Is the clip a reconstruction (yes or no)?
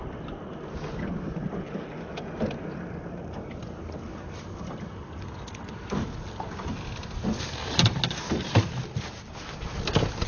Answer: no